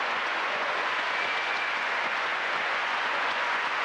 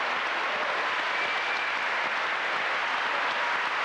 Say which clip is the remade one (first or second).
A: first